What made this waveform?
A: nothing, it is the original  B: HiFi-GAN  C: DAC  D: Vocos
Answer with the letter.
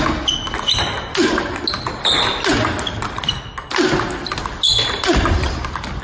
A